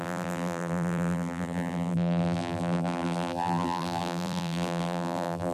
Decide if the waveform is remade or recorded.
remade